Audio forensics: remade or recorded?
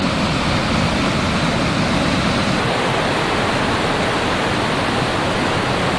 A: recorded